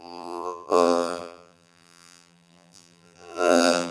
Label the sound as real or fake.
fake